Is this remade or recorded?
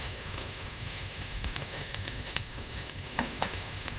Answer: remade